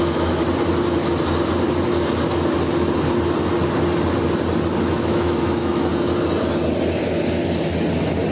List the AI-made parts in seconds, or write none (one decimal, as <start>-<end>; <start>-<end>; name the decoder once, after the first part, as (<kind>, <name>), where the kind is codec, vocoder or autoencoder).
0.0-0.4 (autoencoder, DAC-VAE); 4.8-5.9